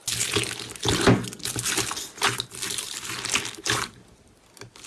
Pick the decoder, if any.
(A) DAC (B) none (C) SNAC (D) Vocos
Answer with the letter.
B